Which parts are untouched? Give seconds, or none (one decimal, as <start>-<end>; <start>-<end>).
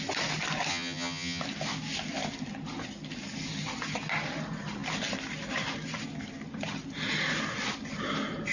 0.0-0.7; 1.4-8.5